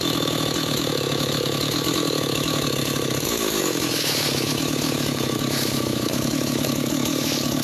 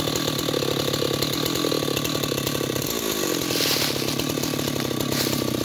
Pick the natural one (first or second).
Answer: second